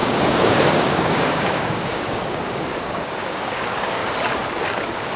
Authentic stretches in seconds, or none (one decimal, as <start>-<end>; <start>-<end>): 4.0-4.6